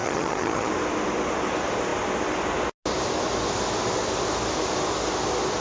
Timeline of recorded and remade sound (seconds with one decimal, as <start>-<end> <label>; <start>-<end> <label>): 0.0-0.7 remade; 0.7-5.6 recorded